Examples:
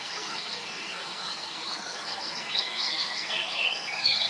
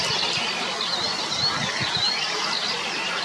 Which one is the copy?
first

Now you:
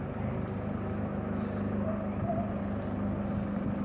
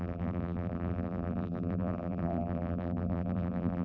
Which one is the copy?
second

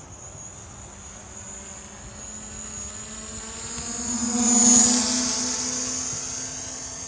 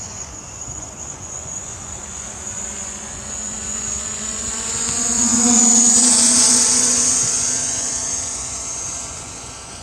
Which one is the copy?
second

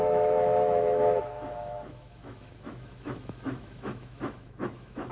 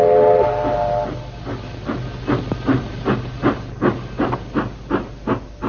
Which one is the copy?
first